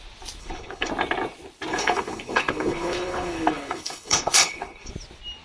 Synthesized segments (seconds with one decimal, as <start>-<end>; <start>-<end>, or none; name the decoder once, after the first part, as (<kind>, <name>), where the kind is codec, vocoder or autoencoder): 0.4-0.9 (codec, HILCodec); 1.7-4.9